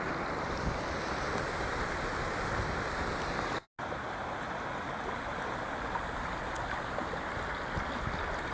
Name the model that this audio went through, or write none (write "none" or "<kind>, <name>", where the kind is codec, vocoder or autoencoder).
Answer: none